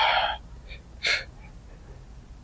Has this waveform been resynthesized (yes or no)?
no